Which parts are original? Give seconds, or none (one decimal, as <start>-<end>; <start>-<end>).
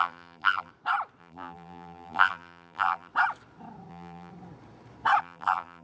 0.7-1.2; 3.1-3.9; 4.3-5.2